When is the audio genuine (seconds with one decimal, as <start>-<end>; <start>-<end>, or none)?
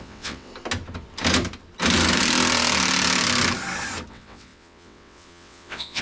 0.5-4.1